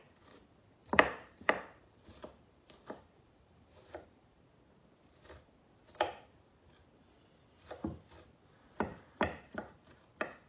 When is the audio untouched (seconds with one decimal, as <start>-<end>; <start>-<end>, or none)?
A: 0.0-0.8; 4.5-8.9; 10.1-10.5